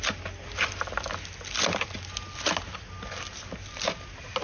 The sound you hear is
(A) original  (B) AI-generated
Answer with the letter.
A